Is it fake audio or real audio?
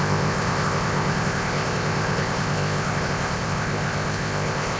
fake